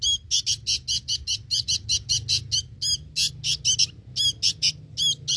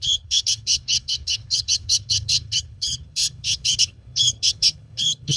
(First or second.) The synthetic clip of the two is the second